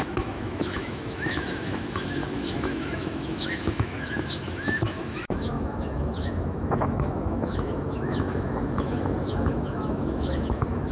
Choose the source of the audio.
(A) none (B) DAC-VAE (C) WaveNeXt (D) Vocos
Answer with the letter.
B